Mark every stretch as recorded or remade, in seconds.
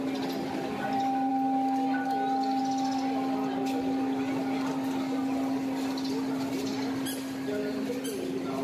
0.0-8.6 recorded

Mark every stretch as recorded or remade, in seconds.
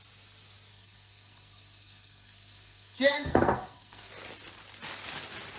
0.0-0.7 recorded; 0.7-4.1 remade; 4.1-5.6 recorded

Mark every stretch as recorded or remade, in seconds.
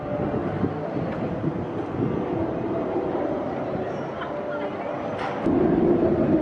0.0-2.4 recorded; 2.4-4.2 remade; 4.2-6.4 recorded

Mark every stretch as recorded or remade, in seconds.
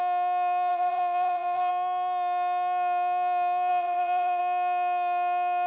0.0-0.7 recorded; 0.7-1.7 remade; 1.7-3.7 recorded; 3.7-4.4 remade; 4.4-5.7 recorded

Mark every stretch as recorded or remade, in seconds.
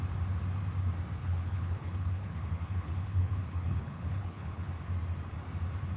0.0-1.2 recorded; 1.2-4.7 remade; 4.7-6.0 recorded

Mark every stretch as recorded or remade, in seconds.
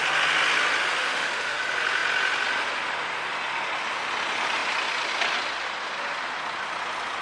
0.0-1.0 recorded; 1.0-1.6 remade; 1.6-7.2 recorded